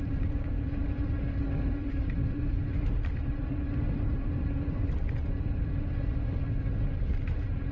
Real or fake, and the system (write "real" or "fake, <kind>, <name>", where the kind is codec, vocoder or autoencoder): fake, vocoder, BigVGAN v2